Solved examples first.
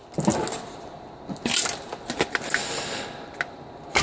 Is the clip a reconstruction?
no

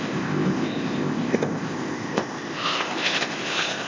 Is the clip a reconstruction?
yes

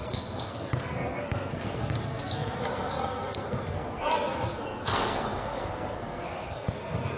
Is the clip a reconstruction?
yes